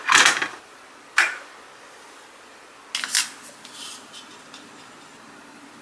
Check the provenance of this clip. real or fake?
real